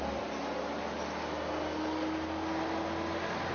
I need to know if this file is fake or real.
real